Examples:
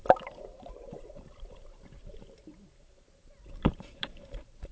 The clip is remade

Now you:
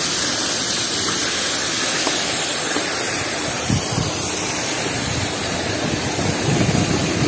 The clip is recorded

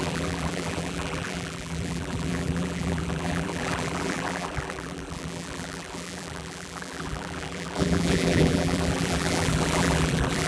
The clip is remade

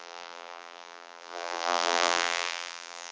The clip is remade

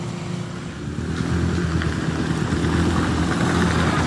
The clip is recorded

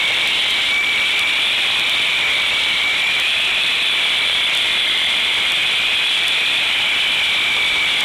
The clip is remade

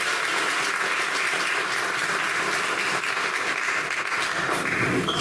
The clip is recorded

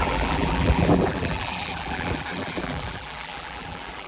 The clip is remade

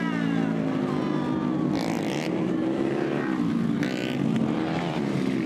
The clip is recorded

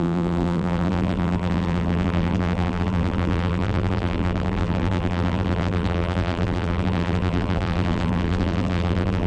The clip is remade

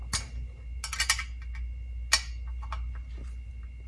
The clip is recorded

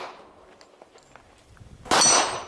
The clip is recorded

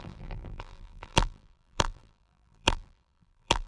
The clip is remade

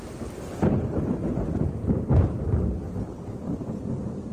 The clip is recorded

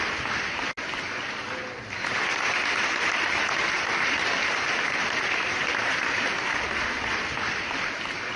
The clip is recorded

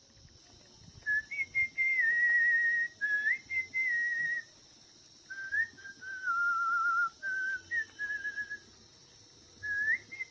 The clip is recorded